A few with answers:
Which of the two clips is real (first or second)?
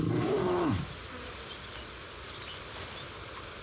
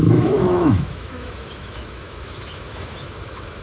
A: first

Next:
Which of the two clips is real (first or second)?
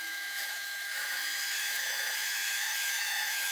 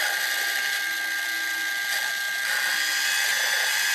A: second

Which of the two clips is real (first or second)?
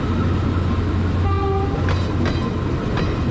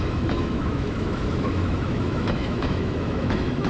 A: first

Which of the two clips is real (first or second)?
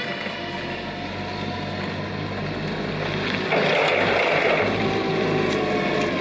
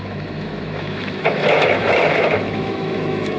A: first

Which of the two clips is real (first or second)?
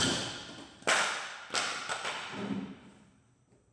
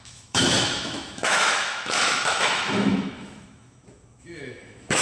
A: first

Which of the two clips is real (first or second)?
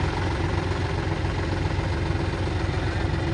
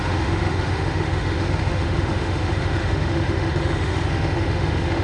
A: first